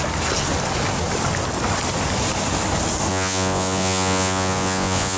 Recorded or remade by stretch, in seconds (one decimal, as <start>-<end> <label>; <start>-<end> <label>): 0.0-3.1 recorded; 3.1-5.2 remade